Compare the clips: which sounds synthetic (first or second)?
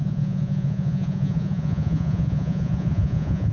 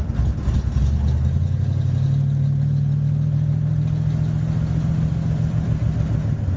first